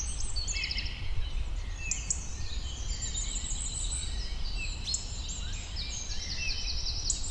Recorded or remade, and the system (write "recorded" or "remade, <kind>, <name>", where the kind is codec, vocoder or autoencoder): recorded